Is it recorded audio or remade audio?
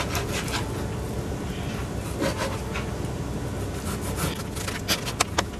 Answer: recorded